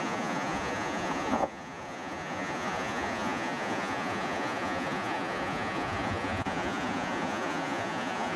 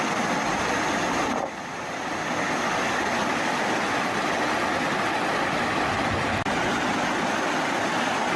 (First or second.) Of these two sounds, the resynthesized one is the first